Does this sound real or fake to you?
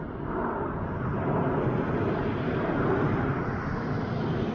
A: real